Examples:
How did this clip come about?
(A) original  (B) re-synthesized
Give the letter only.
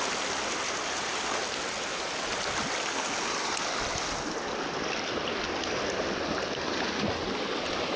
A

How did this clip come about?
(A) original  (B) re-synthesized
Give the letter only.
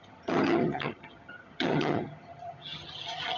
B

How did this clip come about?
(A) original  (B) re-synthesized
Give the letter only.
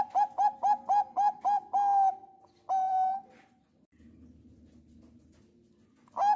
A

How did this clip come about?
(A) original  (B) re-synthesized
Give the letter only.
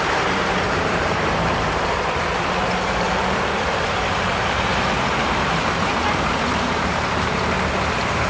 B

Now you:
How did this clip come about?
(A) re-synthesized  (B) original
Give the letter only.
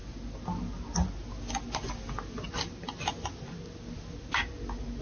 B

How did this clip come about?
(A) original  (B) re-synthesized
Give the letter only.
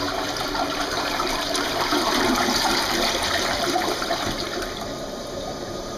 B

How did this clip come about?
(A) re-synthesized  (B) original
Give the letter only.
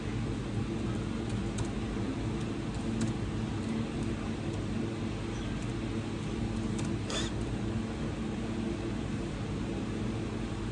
B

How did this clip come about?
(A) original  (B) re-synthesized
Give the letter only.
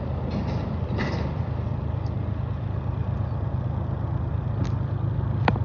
A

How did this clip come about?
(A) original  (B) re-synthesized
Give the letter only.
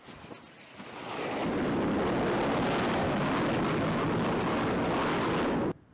A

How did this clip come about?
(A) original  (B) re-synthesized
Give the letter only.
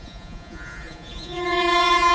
B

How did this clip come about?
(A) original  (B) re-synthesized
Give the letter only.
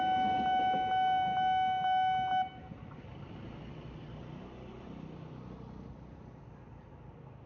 A